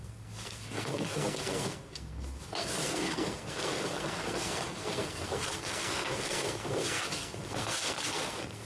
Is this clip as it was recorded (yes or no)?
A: no